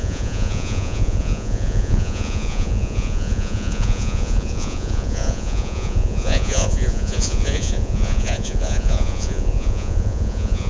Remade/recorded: remade